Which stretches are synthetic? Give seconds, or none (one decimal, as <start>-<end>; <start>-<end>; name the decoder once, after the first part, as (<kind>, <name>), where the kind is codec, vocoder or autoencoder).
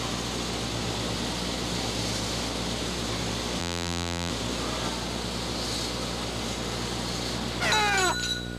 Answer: 3.6-4.3 (vocoder, BigVGAN v2)